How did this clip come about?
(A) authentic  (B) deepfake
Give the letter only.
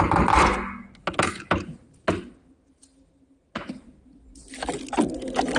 A